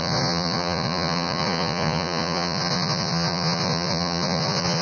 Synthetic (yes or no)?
yes